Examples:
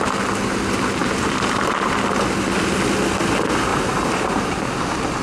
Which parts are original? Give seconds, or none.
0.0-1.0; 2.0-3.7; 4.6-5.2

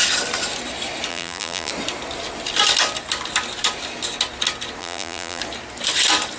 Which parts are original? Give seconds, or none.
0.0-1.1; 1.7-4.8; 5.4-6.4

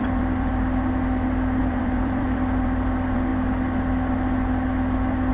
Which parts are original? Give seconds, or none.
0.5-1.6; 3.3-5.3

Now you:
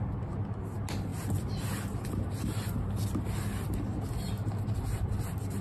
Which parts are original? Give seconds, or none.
0.0-5.6

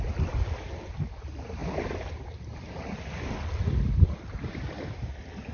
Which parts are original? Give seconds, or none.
none

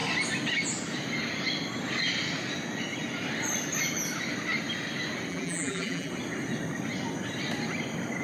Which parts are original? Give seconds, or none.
0.0-5.3; 6.1-8.2

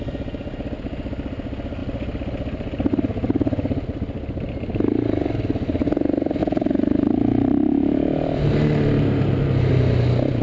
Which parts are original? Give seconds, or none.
0.0-6.4; 9.7-10.4

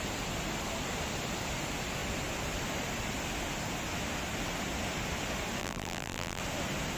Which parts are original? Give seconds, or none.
0.0-5.6; 6.4-7.0